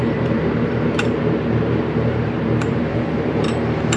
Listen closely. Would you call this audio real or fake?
fake